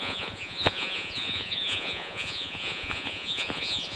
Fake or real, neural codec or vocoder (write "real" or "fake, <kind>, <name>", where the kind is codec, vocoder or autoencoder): fake, vocoder, Vocos